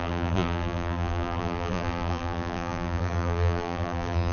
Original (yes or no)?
no